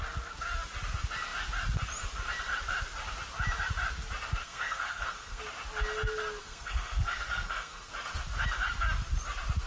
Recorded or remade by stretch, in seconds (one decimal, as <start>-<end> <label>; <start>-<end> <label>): 0.0-4.4 recorded; 4.4-5.4 remade; 5.4-6.4 recorded; 6.4-7.9 remade; 7.9-9.7 recorded